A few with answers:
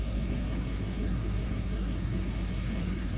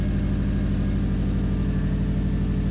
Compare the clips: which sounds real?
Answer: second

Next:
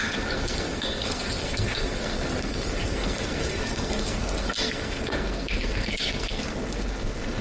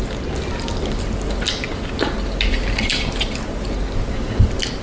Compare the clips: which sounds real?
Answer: second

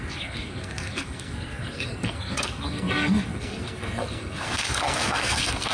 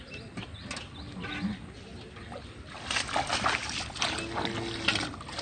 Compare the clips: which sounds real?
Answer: second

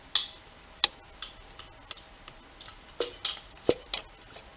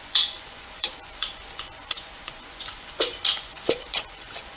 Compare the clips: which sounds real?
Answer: first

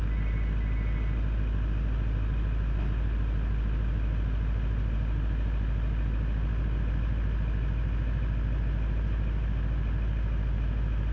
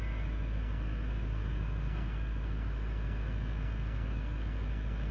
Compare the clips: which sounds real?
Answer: first